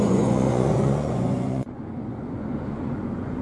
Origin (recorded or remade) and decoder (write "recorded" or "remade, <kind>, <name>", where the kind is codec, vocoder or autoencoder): remade, vocoder, Vocos